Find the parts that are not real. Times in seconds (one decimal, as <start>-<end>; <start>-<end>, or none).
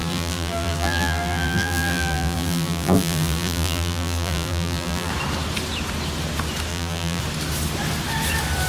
0.0-5.1; 6.7-7.2